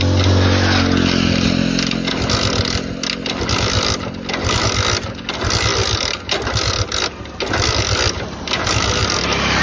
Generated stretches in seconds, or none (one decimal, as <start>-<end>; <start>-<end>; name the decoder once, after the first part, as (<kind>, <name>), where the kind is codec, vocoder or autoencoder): none